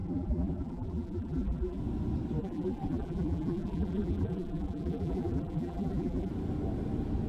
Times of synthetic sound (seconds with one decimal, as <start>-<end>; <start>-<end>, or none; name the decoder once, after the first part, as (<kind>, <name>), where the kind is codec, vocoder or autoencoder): 0.0-1.8 (vocoder, BigVGAN v2); 2.4-6.3